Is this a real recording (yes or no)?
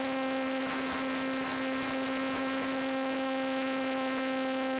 yes